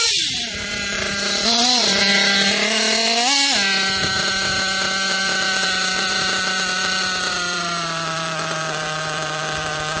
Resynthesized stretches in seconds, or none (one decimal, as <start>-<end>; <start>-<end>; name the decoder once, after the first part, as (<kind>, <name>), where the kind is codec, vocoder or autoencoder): 0.0-2.1 (vocoder, BigVGAN v2); 5.1-10.0